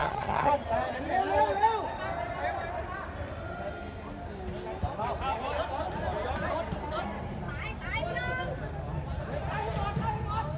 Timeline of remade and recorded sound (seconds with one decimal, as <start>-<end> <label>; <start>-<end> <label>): 0.0-0.5 remade; 0.5-10.6 recorded